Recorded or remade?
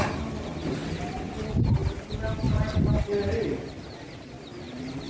recorded